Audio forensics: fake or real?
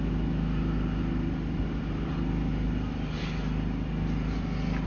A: real